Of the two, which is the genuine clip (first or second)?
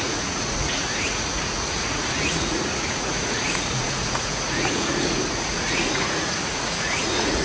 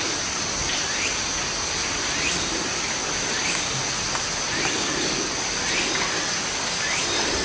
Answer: second